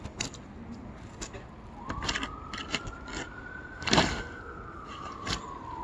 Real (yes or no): yes